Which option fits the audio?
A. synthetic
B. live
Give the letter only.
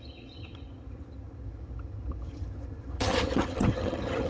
A